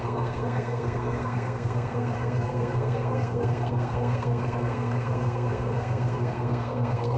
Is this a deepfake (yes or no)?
yes